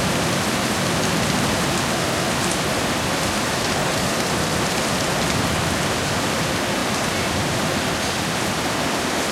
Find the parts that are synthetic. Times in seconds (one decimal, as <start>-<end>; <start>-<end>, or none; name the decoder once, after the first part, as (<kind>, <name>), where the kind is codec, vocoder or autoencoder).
3.8-4.3 (codec, DAC)